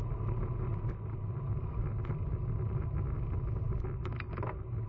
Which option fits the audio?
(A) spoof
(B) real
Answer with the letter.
B